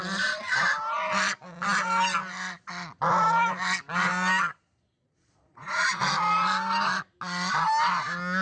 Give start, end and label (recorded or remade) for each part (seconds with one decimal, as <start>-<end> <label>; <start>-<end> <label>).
0.0-4.5 recorded; 4.5-6.0 remade; 6.0-8.4 recorded